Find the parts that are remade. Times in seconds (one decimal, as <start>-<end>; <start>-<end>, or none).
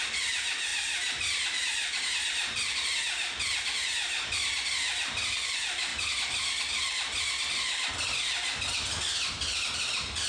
none